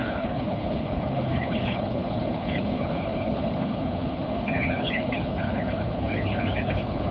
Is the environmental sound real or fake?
fake